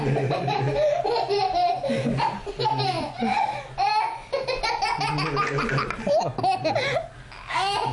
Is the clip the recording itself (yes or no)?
yes